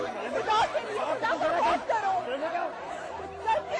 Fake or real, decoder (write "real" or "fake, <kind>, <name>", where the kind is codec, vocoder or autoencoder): real